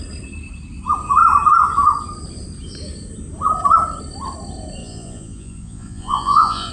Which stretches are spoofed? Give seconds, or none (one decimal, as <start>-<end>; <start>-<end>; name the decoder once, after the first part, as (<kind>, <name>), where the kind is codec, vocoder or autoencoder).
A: 4.8-6.7 (vocoder, Vocos)

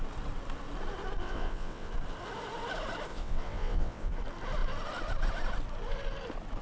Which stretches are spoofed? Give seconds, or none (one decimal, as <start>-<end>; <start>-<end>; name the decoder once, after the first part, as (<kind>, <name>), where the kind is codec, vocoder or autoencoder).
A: 1.2-1.9 (vocoder, WaveNeXt); 3.1-4.1

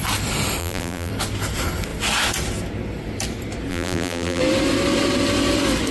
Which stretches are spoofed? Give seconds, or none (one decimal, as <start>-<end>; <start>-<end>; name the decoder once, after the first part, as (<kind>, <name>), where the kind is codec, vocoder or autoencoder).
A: 0.6-1.1 (vocoder, BigVGAN v2); 3.7-4.4